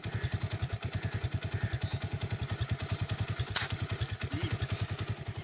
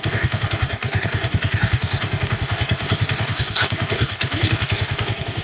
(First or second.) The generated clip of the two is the second